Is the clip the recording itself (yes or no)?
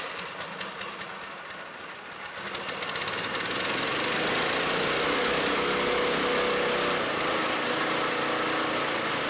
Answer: yes